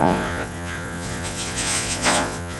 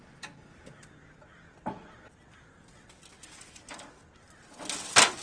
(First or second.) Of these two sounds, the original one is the second